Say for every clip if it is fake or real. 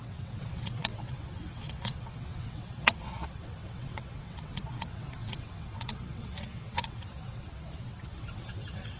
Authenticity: fake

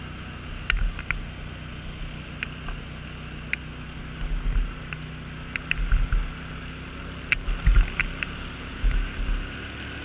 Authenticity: real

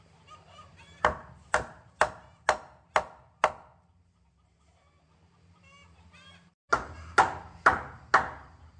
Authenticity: real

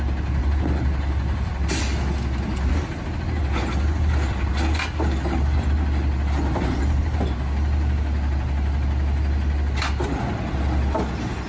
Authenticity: real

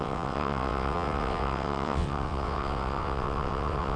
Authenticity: fake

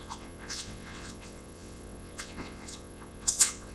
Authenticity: fake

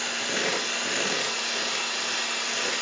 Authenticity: real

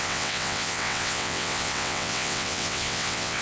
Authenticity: fake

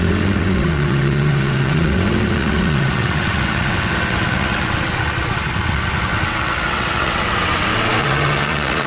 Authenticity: fake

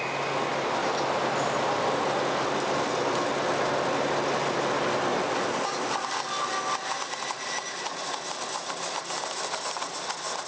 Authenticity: real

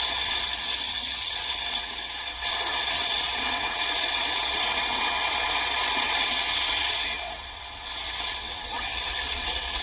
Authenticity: fake